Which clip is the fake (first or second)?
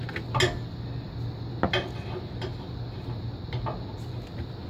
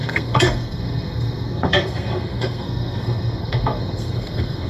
second